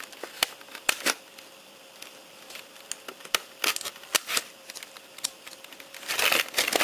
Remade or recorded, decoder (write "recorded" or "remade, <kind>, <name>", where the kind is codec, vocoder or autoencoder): recorded